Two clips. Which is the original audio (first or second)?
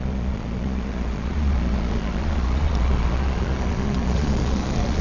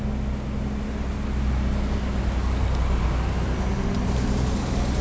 second